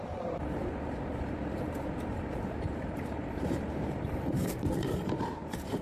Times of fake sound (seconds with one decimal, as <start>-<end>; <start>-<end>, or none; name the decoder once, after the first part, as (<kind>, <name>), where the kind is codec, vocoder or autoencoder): 0.0-4.4 (vocoder, BigVGAN v2); 5.1-5.8